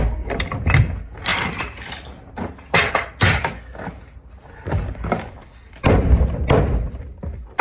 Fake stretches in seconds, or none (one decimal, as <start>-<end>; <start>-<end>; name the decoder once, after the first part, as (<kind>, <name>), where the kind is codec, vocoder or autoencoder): none